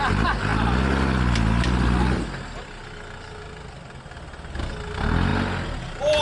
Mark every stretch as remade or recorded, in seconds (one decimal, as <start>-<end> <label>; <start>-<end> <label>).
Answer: 0.0-6.2 recorded